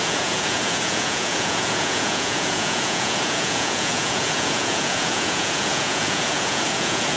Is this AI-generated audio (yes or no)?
yes